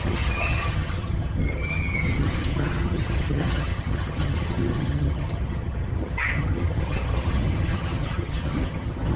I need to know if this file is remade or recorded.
remade